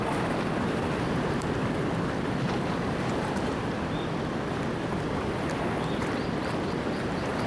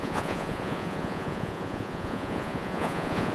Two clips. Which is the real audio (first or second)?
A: first